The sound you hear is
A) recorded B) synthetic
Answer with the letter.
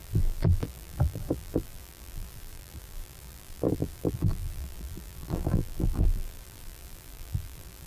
B